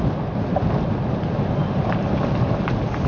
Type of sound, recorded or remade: recorded